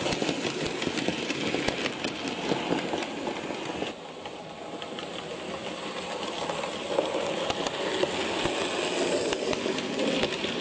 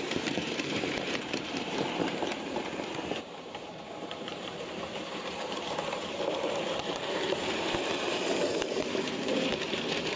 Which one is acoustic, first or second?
first